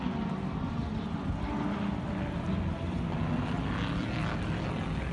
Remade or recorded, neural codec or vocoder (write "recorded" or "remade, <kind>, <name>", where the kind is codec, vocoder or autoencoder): recorded